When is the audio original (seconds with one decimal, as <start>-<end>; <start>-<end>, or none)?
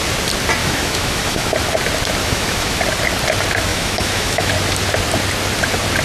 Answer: 0.0-0.6; 1.5-2.2; 2.8-3.7; 4.5-6.0